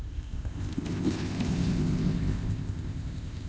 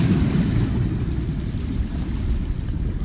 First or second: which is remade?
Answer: first